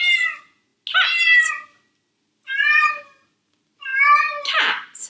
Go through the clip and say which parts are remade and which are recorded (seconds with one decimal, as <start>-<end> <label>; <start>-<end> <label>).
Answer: 0.0-5.1 recorded